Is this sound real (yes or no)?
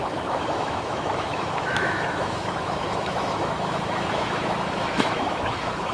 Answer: no